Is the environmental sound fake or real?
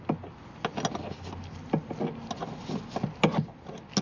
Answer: real